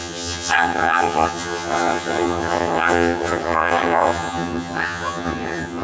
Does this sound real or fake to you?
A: fake